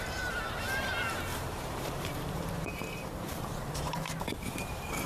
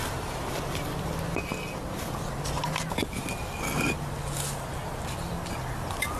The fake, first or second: first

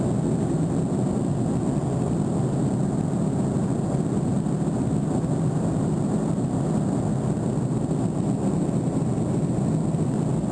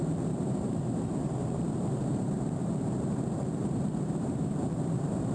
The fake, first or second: second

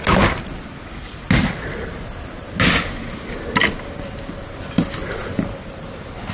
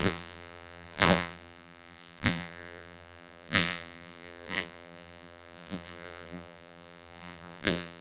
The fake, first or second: second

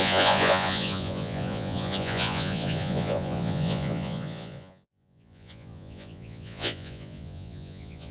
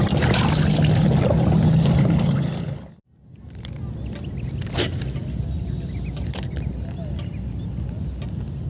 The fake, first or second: first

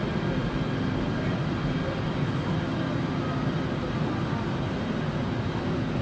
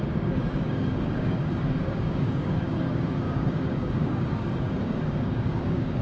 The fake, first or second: second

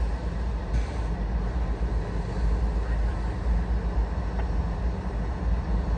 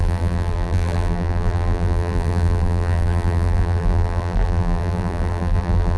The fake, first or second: second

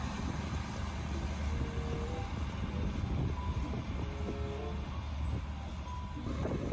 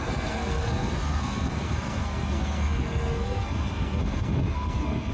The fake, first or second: second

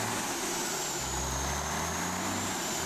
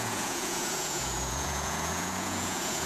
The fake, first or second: second